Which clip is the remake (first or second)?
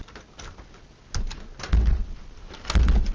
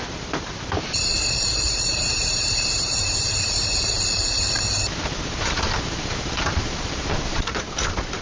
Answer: second